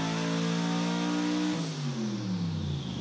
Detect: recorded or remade recorded